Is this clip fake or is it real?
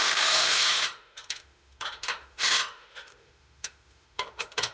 fake